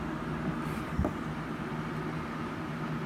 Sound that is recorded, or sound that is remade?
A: recorded